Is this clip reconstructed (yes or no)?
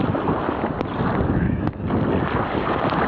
no